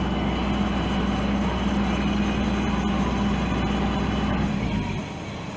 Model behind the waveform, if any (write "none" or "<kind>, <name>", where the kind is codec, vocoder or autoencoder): none